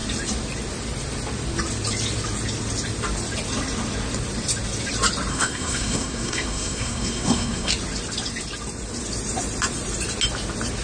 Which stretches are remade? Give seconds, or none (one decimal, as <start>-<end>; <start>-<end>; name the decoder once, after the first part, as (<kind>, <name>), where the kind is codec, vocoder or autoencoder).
5.3-7.7 (codec, SNAC)

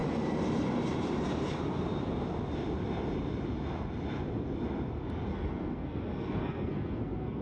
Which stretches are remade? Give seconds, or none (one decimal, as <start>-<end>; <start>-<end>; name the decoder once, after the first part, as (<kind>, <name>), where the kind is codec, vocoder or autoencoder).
5.3-7.4 (codec, SNAC)

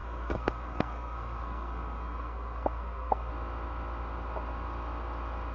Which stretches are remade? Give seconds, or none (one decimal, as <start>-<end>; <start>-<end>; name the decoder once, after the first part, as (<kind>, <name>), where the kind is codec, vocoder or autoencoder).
0.0-3.3 (codec, SNAC)

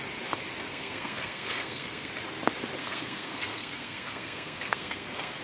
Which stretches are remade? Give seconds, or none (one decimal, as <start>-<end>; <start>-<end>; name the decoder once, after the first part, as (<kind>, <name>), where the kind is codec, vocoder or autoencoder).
0.7-2.1 (codec, SNAC); 2.8-5.4

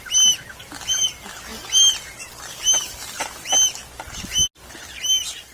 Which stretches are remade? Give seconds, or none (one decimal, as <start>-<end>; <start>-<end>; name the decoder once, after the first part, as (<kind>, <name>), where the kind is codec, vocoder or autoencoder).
none